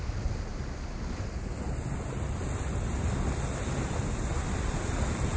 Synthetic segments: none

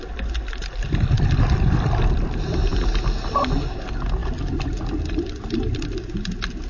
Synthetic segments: none

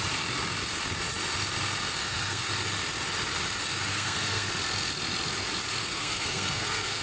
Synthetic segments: 2.0-2.5 (codec, SNAC); 3.9-4.5; 5.8-7.0